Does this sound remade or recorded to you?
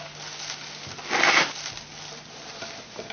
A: recorded